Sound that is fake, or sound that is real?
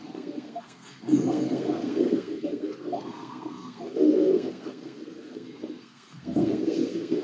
fake